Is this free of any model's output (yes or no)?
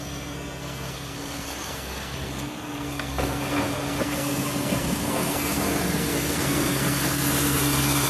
no